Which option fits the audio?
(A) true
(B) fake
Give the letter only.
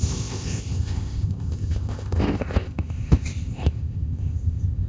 B